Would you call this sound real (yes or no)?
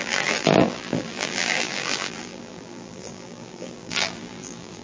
no